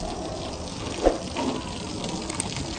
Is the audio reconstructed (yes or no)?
no